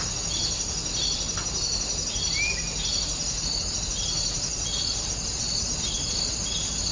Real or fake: real